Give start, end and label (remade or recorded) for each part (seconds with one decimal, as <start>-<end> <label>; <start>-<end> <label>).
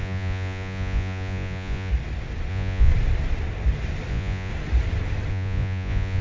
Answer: 0.0-1.9 remade; 1.9-2.5 recorded; 2.5-2.9 remade; 2.9-4.1 recorded; 4.1-4.5 remade; 4.5-5.3 recorded; 5.3-6.2 remade